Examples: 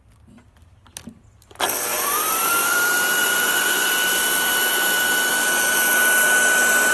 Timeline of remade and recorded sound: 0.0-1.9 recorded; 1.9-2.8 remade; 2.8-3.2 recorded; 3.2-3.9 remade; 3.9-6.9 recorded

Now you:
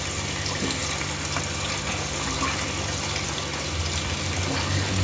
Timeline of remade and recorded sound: 0.0-5.0 recorded

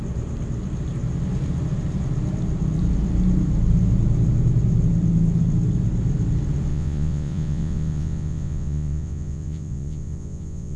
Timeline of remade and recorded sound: 0.0-6.7 recorded; 6.7-10.8 remade

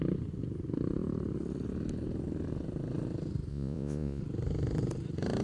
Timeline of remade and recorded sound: 0.0-3.5 recorded; 3.5-4.2 remade; 4.2-5.4 recorded

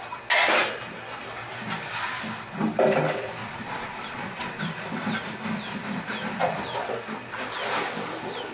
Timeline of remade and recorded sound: 0.0-3.4 recorded; 3.4-4.6 remade; 4.6-8.5 recorded

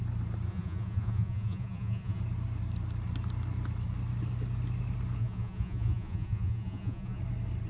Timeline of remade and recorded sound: 0.0-0.5 recorded; 0.5-2.2 remade; 2.2-5.2 recorded; 5.2-7.2 remade; 7.2-7.7 recorded

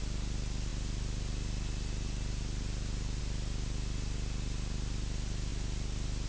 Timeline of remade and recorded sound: 0.0-6.3 recorded